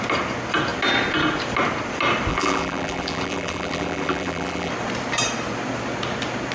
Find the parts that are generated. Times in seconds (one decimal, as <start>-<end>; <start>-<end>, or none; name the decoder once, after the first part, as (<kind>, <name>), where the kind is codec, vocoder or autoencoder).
2.3-4.7 (vocoder, BigVGAN v2)